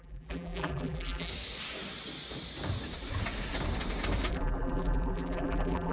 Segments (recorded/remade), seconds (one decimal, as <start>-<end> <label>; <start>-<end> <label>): 0.0-1.3 remade; 1.3-4.3 recorded; 4.3-5.9 remade